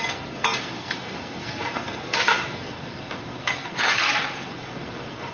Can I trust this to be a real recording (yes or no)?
no